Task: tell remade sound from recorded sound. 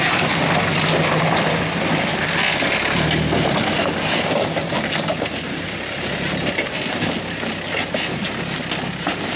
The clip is recorded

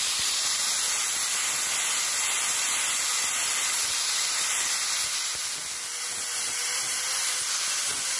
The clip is remade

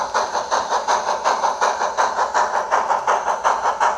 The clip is remade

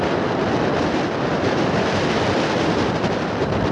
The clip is remade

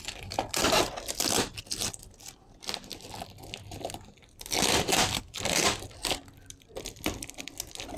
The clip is recorded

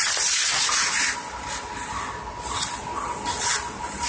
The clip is recorded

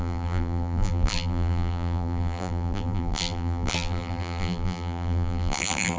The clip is remade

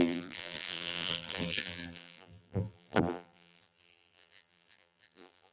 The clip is remade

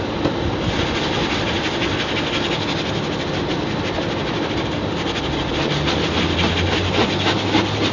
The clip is recorded